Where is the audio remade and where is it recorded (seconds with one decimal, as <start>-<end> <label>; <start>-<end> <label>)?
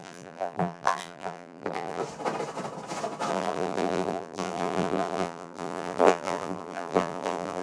0.0-2.0 remade; 2.0-3.3 recorded; 3.3-7.6 remade